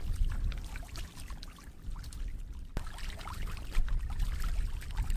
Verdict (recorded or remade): recorded